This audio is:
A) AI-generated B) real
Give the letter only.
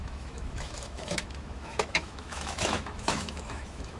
A